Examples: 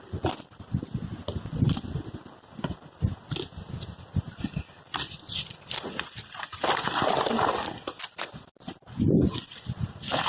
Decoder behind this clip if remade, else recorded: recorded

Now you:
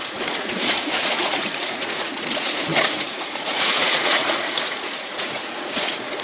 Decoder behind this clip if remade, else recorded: remade, vocoder, Vocos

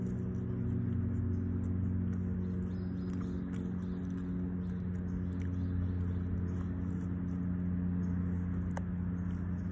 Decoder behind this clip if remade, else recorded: recorded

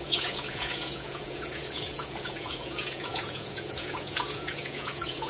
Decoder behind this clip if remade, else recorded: remade, vocoder, Vocos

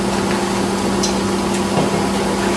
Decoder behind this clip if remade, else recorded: recorded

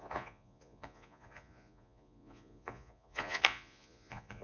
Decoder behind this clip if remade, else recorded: remade, vocoder, Vocos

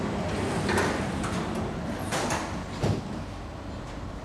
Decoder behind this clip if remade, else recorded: recorded